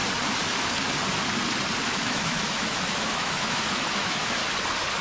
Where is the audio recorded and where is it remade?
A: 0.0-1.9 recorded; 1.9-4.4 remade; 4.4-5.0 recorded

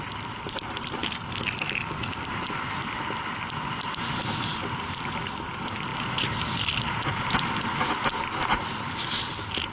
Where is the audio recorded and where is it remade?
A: 0.0-9.7 recorded

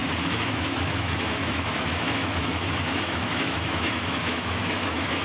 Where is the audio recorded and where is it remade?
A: 0.0-5.2 remade

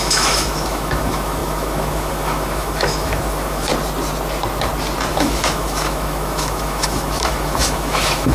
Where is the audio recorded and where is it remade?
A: 0.0-3.7 remade; 3.7-5.1 recorded; 5.1-8.3 remade

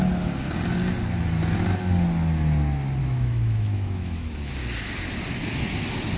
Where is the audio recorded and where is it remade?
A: 0.0-3.0 recorded; 3.0-4.5 remade; 4.5-6.2 recorded